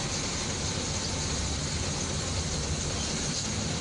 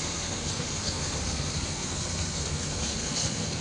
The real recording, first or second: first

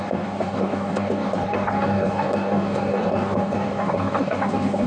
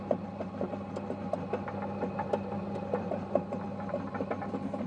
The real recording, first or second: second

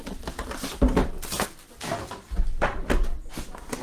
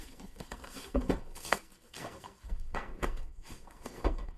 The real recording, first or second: first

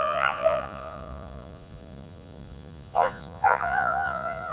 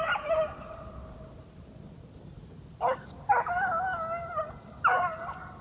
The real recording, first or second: second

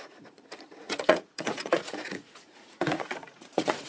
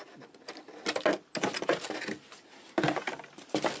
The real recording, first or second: second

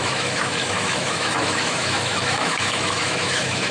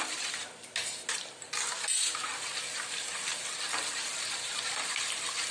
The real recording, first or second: second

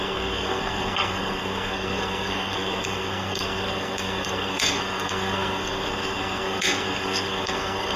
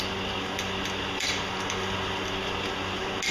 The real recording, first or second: second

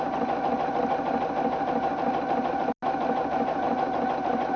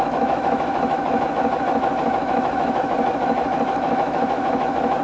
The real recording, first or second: first